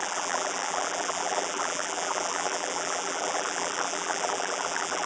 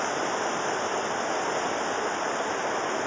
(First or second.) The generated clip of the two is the first